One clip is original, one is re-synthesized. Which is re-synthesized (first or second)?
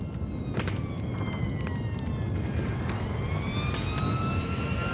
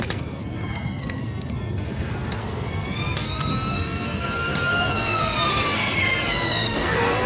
second